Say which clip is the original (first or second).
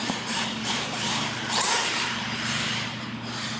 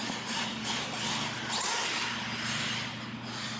second